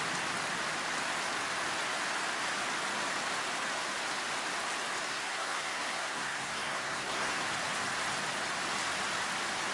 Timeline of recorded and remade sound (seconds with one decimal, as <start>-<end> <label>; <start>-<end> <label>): 0.0-5.1 recorded; 5.1-7.5 remade; 7.5-9.7 recorded